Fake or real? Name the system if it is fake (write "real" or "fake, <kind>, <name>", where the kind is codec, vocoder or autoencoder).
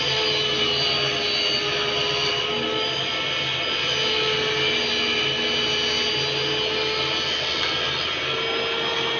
real